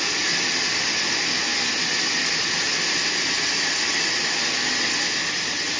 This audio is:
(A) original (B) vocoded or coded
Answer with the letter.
A